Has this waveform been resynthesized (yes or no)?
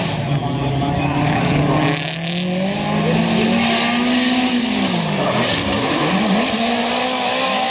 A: no